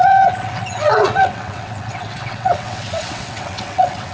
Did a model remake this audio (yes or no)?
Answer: yes